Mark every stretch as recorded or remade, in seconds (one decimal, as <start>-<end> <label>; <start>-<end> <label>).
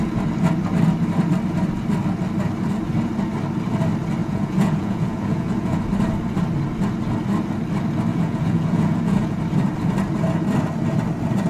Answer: 0.0-4.2 recorded; 4.2-5.8 remade; 5.8-8.1 recorded; 8.1-9.4 remade; 9.4-11.5 recorded